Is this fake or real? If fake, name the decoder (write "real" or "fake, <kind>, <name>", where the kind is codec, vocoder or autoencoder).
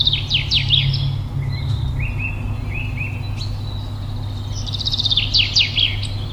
real